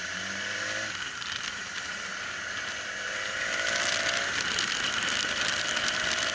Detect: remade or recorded recorded